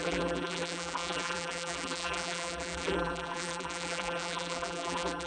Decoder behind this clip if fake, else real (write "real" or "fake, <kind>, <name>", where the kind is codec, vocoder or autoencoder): fake, vocoder, BigVGAN v2